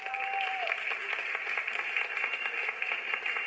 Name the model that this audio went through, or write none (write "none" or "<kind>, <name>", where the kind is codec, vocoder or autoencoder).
none